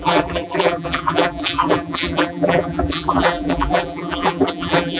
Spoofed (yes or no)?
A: yes